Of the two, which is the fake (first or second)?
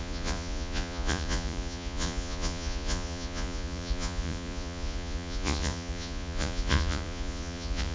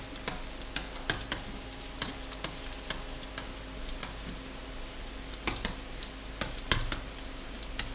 first